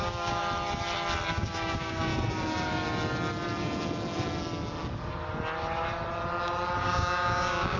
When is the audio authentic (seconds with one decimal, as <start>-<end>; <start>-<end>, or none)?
0.4-1.3; 2.1-6.8

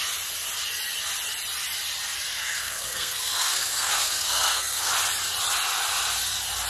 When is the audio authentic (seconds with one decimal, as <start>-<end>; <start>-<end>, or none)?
0.0-2.3; 4.9-6.7